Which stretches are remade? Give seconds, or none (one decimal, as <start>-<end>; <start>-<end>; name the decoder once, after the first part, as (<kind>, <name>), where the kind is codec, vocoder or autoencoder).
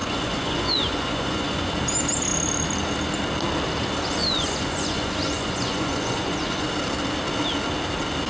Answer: 0.0-1.7 (vocoder, Vocos); 4.2-6.7